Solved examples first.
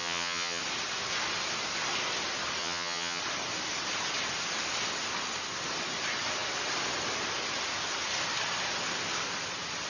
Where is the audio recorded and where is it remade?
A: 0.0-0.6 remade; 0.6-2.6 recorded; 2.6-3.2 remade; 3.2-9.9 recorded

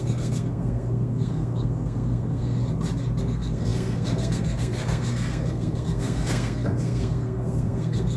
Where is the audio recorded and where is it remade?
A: 0.0-2.6 remade; 2.6-3.2 recorded; 3.2-8.2 remade

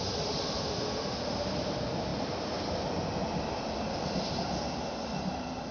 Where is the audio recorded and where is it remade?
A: 0.0-5.7 recorded

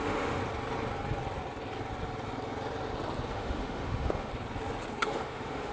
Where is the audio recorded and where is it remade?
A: 0.0-0.4 remade; 0.4-3.3 recorded; 3.3-4.3 remade; 4.3-4.9 recorded; 4.9-5.7 remade

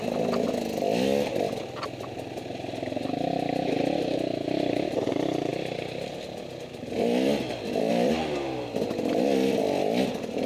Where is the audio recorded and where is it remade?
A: 0.0-10.5 recorded